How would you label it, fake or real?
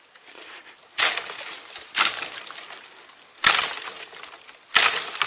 real